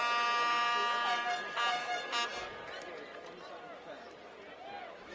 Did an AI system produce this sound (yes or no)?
no